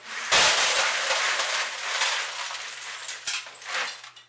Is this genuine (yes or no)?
yes